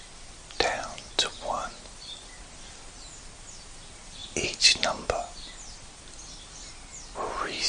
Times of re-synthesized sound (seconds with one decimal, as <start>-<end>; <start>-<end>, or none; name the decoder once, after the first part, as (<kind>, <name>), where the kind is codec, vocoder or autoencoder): 1.3-2.4 (vocoder, BigVGAN v2); 4.2-5.2